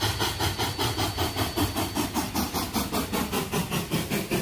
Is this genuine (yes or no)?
yes